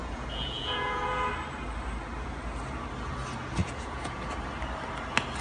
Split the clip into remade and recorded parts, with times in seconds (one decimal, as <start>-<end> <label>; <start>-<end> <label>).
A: 0.0-1.3 remade; 1.3-3.6 recorded; 3.6-4.2 remade; 4.2-5.4 recorded